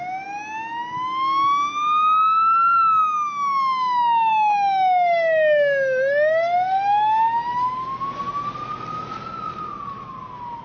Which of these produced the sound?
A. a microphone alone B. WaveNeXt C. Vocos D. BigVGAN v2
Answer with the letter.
A